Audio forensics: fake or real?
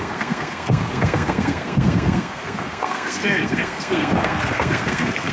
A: fake